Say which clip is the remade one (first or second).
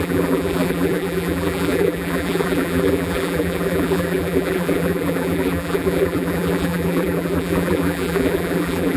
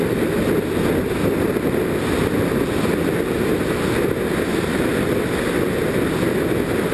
first